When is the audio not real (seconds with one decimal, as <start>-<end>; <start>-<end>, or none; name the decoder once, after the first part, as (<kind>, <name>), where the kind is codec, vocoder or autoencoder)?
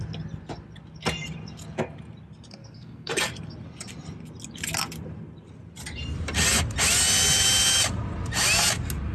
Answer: 2.6-3.2 (codec, SNAC)